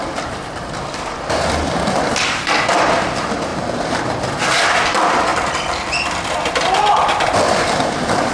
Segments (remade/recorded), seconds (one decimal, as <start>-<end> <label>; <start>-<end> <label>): 0.0-8.3 remade